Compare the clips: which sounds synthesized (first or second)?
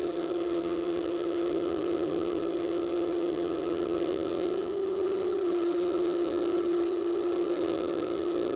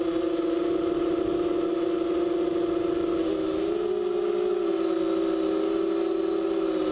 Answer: first